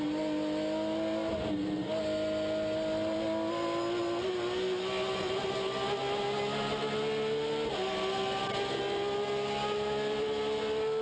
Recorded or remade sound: recorded